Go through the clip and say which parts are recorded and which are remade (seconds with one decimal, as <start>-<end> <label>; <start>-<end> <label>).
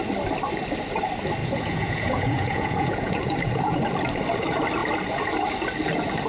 0.0-1.4 recorded; 1.4-3.8 remade; 3.8-6.3 recorded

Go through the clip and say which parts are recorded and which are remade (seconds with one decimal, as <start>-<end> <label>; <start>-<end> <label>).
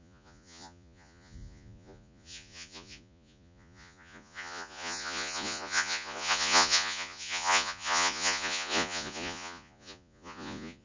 0.0-10.8 remade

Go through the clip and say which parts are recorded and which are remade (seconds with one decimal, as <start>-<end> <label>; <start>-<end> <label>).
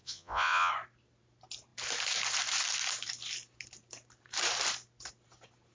0.0-0.7 remade; 0.7-5.7 recorded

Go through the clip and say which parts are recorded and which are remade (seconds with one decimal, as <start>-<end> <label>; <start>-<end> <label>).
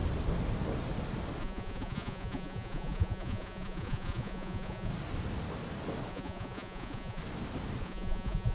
0.0-1.4 recorded; 1.4-4.9 remade; 4.9-6.1 recorded; 6.1-7.2 remade; 7.2-7.8 recorded; 7.8-8.5 remade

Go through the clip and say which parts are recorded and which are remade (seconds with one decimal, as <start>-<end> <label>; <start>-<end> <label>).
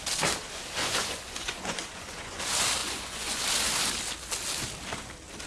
0.0-0.8 recorded; 0.8-2.4 remade; 2.4-2.8 recorded; 2.8-3.4 remade; 3.4-5.5 recorded